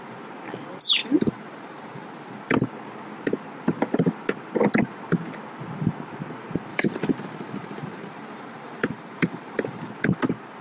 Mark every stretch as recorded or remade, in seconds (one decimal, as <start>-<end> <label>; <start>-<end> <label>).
0.0-1.0 recorded; 1.0-2.4 remade; 2.4-6.7 recorded; 6.7-9.9 remade; 9.9-10.6 recorded